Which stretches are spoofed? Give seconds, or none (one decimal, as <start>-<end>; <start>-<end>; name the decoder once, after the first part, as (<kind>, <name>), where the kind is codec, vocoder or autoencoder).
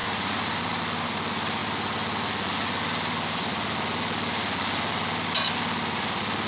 0.0-0.6 (vocoder, BigVGAN v2)